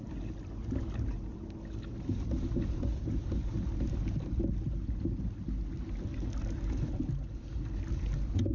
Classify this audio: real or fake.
real